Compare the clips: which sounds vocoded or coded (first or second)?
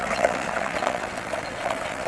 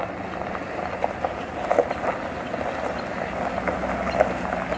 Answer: first